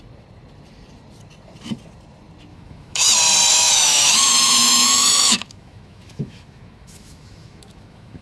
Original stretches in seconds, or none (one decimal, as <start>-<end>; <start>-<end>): 0.0-2.5; 3.1-3.5